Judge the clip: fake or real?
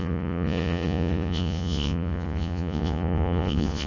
fake